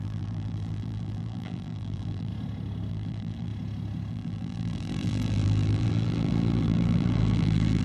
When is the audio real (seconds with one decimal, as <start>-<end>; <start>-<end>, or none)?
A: 2.3-2.9; 3.5-4.1